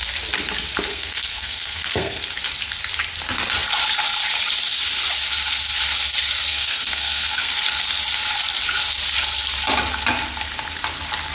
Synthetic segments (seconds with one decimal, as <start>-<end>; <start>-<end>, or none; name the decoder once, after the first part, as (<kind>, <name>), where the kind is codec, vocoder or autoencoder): 0.9-2.2 (codec, SNAC); 6.5-7.5

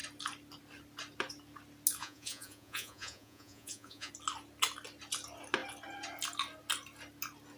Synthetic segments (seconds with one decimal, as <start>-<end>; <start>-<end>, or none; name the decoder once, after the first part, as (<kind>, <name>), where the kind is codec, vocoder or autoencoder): 2.0-4.1 (vocoder, Vocos)

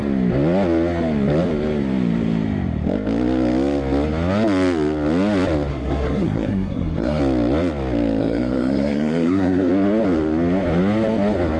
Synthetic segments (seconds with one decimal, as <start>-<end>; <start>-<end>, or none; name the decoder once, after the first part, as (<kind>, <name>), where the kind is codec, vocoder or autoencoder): 5.7-7.2 (codec, SNAC); 8.2-9.7

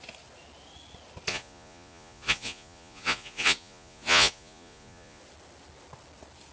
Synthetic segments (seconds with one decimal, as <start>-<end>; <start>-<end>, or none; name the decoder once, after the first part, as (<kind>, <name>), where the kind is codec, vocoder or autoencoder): 1.3-5.2 (vocoder, Vocos)

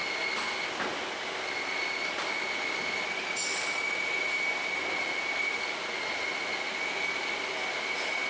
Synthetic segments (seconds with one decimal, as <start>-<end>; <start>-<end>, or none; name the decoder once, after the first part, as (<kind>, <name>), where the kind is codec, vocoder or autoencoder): none

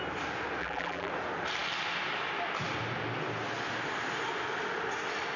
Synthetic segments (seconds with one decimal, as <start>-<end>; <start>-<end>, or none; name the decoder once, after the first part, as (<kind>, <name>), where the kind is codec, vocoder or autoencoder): 0.6-1.1 (vocoder, BigVGAN v2)

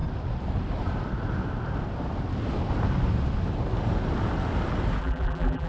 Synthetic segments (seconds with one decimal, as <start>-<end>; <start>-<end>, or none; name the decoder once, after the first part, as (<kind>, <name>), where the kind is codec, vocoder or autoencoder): 5.0-5.7 (vocoder, BigVGAN v2)

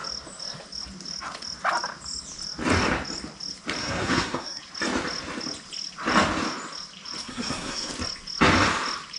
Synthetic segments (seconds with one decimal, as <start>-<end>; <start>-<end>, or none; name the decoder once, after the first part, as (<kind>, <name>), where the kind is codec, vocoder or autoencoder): 3.8-4.6 (codec, SNAC); 7.2-7.9